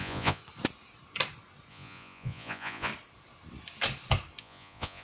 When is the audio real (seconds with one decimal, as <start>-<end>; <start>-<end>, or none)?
0.4-1.7; 2.9-4.4